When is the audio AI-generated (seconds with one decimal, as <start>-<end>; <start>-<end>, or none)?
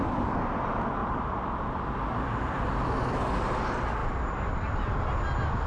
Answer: 1.0-2.6; 4.0-4.6